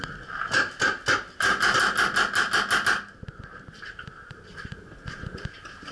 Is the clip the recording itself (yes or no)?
yes